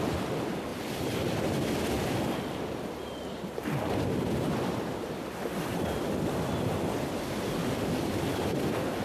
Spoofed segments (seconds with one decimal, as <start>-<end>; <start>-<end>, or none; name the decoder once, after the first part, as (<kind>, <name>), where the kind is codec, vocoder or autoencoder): 5.7-6.2 (vocoder, BigVGAN v2)